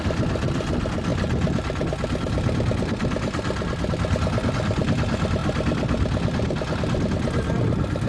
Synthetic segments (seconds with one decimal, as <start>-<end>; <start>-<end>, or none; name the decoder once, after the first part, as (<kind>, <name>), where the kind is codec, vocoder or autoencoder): none